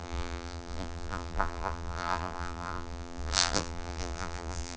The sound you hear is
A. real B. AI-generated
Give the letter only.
B